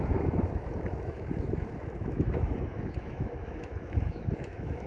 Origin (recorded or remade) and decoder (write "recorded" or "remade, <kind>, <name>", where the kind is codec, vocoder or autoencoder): remade, autoencoder, DAC-VAE